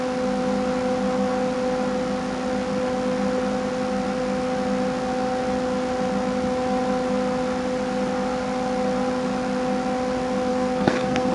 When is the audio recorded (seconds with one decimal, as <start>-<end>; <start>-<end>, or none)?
0.0-10.5